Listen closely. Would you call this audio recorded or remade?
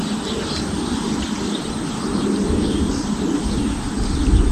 recorded